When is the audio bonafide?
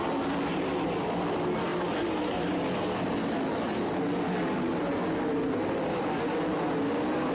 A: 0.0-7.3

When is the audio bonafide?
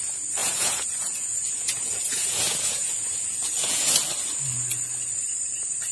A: 0.0-0.4; 3.9-5.9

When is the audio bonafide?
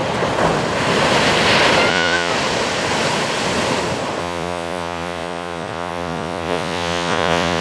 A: 0.0-1.9; 2.3-4.2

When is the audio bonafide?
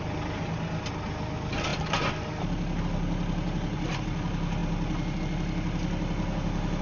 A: 0.0-6.8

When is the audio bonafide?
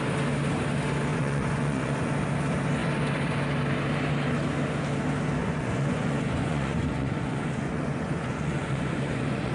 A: 0.0-1.1; 2.1-5.4